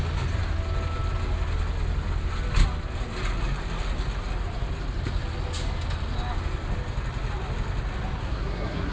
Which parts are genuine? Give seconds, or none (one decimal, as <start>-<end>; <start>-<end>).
0.0-8.2